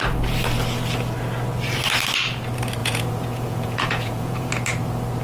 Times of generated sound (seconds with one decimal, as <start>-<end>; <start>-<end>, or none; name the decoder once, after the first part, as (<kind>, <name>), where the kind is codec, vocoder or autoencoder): 2.8-4.5 (vocoder, Vocos)